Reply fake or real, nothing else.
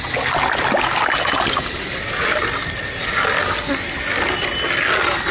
real